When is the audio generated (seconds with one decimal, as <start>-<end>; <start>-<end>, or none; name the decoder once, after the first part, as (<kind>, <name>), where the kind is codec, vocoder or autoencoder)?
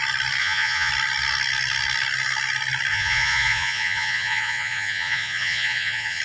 0.4-0.9 (vocoder, Vocos); 2.9-6.2